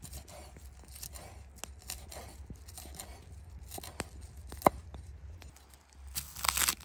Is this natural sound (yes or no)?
yes